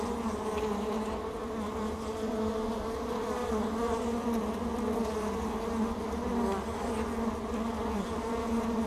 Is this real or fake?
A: real